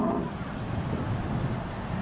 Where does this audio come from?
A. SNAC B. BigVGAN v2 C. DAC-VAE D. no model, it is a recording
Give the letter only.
D